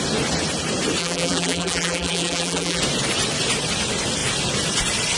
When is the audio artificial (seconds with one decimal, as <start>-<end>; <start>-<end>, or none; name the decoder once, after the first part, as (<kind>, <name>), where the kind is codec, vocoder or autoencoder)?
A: 1.0-2.8 (vocoder, BigVGAN v2)